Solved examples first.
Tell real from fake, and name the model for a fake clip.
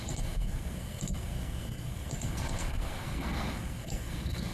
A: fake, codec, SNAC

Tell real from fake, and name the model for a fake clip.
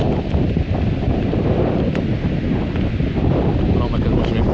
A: real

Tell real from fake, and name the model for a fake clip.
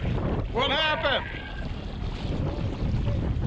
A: real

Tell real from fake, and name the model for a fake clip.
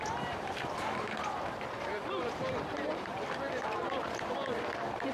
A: fake, vocoder, BigVGAN v2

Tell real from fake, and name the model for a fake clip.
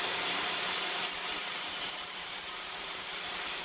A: fake, vocoder, BigVGAN v2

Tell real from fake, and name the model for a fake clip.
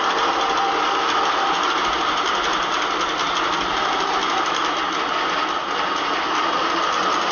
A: real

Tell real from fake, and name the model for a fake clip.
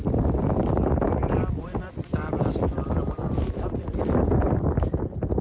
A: real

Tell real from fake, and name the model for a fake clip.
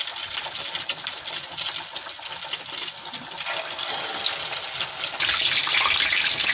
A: real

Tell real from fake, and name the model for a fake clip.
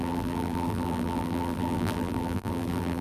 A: fake, vocoder, BigVGAN v2